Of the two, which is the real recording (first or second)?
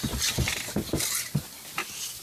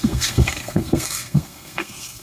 first